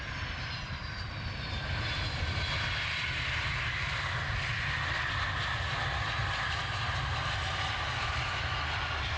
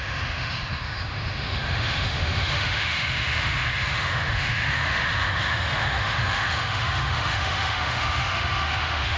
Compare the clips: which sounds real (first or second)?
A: first